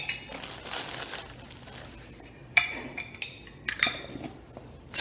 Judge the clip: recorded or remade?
recorded